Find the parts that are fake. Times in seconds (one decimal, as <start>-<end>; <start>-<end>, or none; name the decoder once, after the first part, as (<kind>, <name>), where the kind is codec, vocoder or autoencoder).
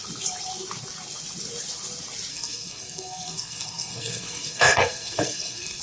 2.3-5.8 (codec, SNAC)